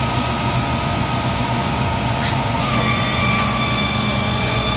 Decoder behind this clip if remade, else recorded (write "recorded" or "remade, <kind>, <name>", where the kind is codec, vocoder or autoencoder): remade, vocoder, Vocos